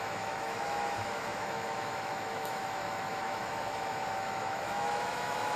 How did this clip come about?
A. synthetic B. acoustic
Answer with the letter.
A